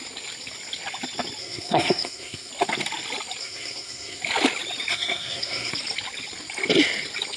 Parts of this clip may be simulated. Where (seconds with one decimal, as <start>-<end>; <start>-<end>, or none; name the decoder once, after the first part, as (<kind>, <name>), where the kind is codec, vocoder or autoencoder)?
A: 1.4-2.5 (codec, SNAC); 3.4-4.2; 4.9-5.7